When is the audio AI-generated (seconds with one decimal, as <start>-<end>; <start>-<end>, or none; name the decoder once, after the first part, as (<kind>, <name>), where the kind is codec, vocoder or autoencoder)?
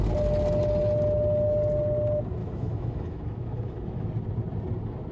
2.4-4.1 (autoencoder, DAC-VAE)